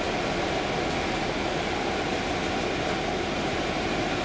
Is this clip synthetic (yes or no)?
no